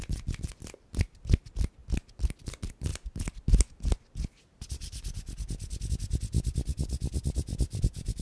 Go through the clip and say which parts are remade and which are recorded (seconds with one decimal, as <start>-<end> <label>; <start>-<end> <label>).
0.0-8.2 recorded